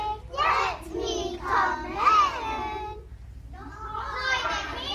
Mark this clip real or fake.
real